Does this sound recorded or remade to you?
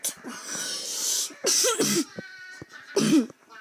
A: recorded